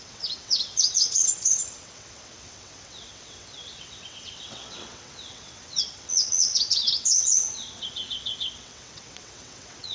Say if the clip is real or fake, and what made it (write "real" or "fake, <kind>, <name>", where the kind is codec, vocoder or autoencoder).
fake, vocoder, WaveNeXt